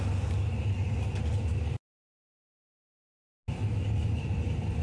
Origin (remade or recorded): recorded